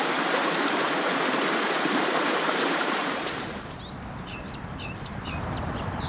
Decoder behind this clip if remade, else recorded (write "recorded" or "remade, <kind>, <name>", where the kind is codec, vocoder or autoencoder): remade, vocoder, BigVGAN v2